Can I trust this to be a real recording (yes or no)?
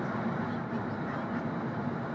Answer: yes